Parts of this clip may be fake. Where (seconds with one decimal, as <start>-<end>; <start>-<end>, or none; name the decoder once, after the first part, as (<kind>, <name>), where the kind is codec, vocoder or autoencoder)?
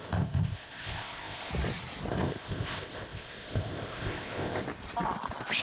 0.0-1.5 (codec, ZipCodec); 2.1-4.6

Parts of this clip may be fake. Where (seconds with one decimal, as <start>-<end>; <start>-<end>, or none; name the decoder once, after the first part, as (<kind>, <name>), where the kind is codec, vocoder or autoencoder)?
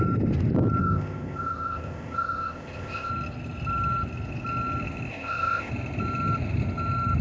0.8-3.1 (codec, ZipCodec); 5.1-5.7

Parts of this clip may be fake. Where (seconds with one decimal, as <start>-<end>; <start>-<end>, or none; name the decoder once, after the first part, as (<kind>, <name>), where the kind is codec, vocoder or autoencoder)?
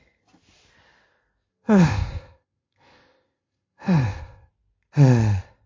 1.5-4.5 (codec, ZipCodec)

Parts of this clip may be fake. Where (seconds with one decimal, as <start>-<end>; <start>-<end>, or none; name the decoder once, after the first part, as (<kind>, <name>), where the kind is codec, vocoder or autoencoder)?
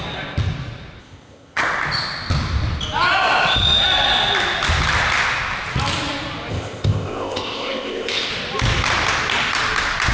1.0-1.6 (codec, ZipCodec); 6.5-8.3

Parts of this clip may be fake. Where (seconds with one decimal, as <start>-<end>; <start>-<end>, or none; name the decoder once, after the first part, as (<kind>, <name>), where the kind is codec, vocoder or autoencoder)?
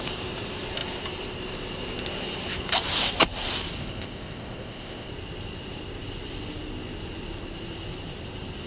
3.8-5.1 (codec, ZipCodec)